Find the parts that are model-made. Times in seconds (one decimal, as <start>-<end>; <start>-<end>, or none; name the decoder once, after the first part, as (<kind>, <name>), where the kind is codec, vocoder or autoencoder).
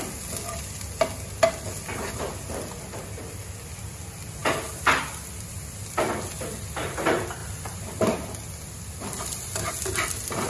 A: none